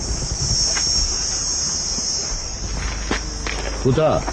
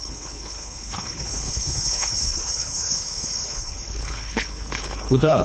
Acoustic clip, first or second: first